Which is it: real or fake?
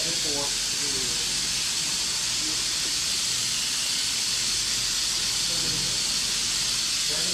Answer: real